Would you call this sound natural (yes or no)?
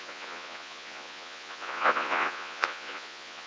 no